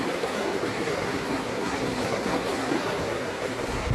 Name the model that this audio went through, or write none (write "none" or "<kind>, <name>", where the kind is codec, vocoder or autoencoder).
codec, SNAC